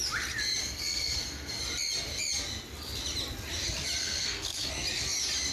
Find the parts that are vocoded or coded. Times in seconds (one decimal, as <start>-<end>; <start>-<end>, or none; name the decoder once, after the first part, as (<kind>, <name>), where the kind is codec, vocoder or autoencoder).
0.6-1.6 (codec, SNAC); 4.0-4.7